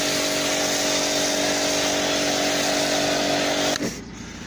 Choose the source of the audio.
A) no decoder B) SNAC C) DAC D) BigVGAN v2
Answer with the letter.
A